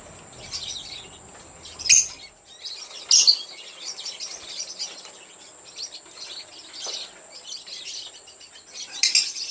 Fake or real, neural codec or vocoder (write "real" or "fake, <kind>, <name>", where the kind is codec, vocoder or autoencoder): real